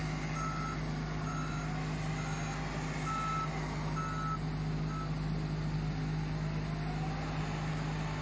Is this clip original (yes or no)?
yes